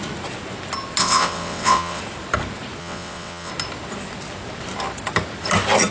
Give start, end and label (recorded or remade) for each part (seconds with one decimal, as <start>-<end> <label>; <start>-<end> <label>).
0.0-1.0 recorded; 1.0-2.0 remade; 2.0-2.8 recorded; 2.8-3.5 remade; 3.5-5.9 recorded